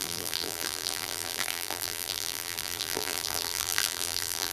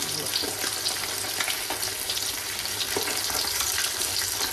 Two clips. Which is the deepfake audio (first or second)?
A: first